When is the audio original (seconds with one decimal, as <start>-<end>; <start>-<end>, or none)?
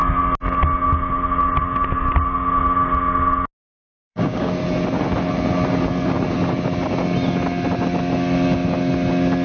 0.0-3.8; 4.5-9.4